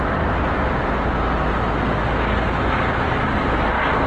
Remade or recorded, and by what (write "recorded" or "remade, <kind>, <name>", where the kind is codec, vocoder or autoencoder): recorded